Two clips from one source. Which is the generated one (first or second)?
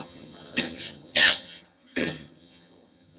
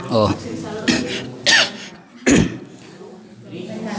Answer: first